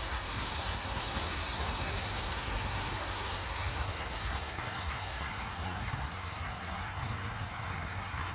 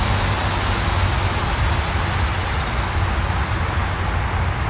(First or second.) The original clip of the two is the second